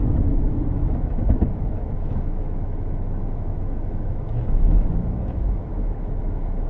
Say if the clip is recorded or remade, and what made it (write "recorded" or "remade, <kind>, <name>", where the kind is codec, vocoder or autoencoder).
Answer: remade, autoencoder, DAC-VAE